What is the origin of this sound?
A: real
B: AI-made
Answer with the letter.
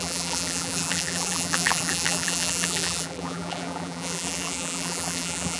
B